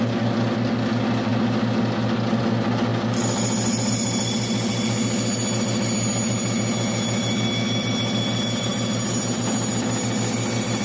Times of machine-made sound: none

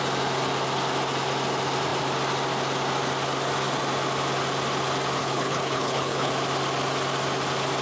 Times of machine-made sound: 5.2-6.3 (codec, HILCodec)

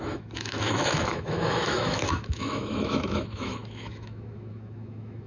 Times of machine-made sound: 0.0-5.3 (autoencoder, DAC-VAE)

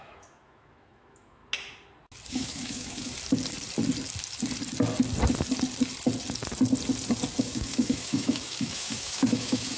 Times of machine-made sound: 0.0-1.4 (autoencoder, DAC-VAE); 2.3-3.1; 7.4-9.8